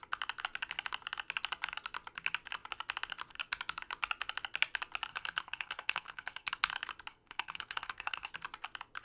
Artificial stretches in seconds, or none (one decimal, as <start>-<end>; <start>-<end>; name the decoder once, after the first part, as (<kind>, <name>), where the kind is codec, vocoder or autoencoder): 5.1-6.5 (codec, SNAC); 7.1-8.3

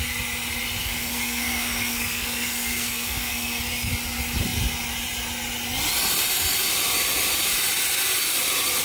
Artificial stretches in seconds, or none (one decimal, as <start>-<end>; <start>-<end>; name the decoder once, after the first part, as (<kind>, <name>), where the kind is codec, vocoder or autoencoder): 0.8-3.9 (codec, SNAC)

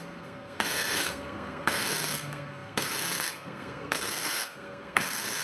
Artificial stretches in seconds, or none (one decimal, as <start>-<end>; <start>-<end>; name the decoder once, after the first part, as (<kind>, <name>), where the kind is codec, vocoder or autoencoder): 0.0-5.4 (codec, SNAC)